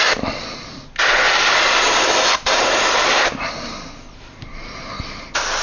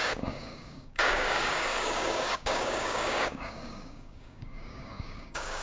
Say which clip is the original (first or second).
first